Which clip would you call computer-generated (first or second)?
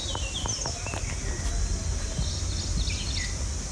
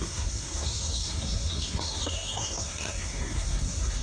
second